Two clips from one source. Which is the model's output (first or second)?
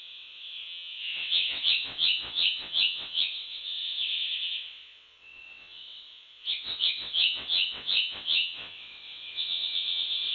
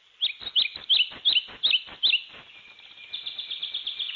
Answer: first